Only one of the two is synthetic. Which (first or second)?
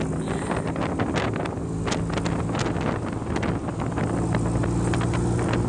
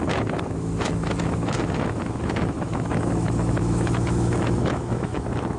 second